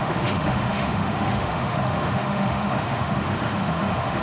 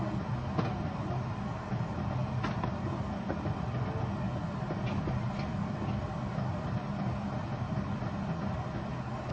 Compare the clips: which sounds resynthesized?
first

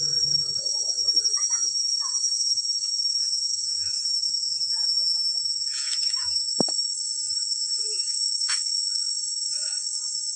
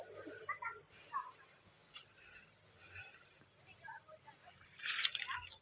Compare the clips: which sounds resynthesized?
first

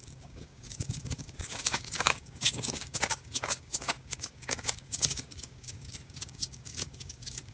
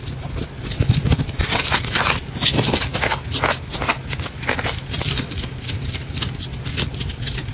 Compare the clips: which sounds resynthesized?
first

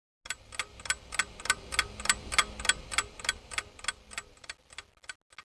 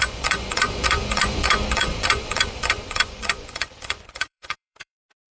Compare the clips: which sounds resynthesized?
second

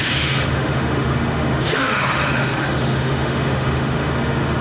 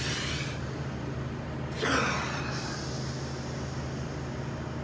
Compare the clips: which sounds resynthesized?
first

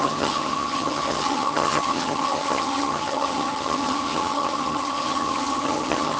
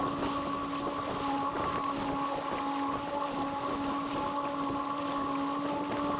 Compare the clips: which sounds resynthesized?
first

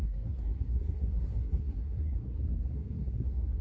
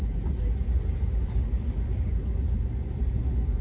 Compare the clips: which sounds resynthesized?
first